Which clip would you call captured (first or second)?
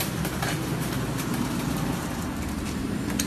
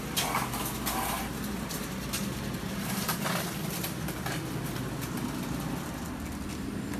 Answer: second